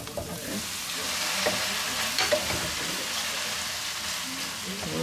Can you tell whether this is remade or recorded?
recorded